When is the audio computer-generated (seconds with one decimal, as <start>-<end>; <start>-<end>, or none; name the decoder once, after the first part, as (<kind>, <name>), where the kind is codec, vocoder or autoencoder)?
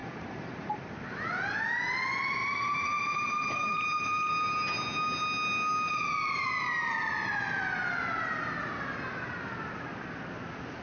0.0-0.7 (vocoder, BigVGAN v2); 2.4-4.3